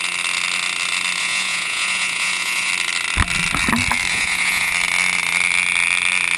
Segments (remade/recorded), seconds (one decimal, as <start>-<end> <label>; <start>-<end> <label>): 0.0-1.2 recorded; 1.2-2.7 remade; 2.7-4.1 recorded; 4.1-4.7 remade; 4.7-6.4 recorded